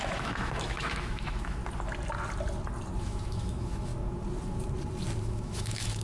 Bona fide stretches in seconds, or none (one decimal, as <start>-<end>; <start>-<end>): 1.6-3.0; 3.9-5.2